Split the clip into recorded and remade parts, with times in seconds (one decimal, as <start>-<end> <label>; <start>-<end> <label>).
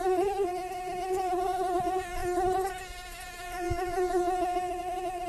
0.0-2.2 remade; 2.2-2.7 recorded; 2.7-5.3 remade